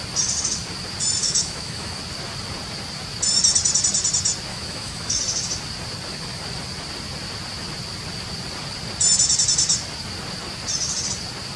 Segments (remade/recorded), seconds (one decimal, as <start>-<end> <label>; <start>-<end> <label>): 0.0-1.2 recorded; 1.2-2.0 remade; 2.0-4.5 recorded; 4.5-5.2 remade; 5.2-11.6 recorded